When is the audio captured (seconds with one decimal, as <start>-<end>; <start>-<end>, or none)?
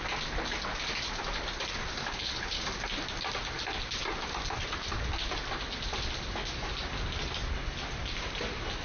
0.0-2.0; 2.6-8.8